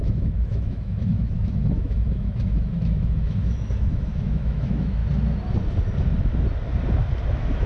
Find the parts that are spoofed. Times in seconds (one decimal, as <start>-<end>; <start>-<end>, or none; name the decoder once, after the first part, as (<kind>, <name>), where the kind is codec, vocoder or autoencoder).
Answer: 0.0-5.0 (autoencoder, DAC-VAE); 7.3-7.7